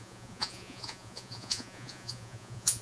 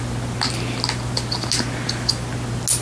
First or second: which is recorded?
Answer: second